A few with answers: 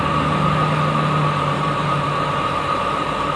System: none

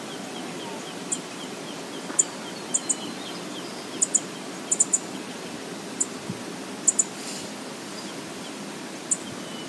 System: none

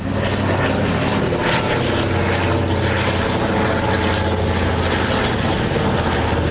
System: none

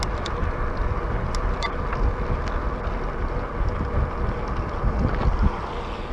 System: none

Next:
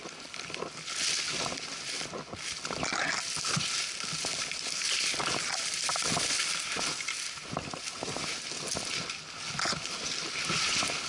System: none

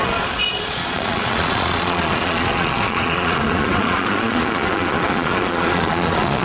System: vocoder, Vocos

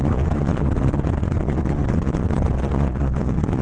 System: vocoder, Vocos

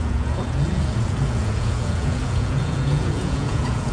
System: vocoder, Vocos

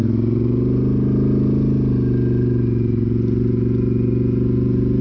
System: none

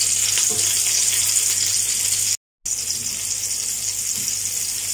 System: none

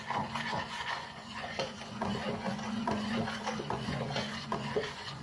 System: vocoder, Vocos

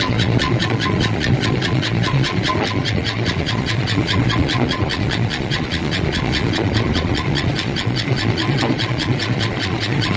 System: vocoder, Vocos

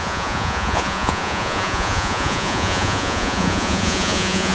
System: vocoder, Vocos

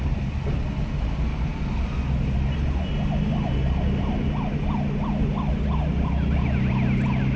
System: none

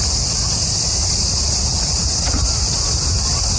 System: none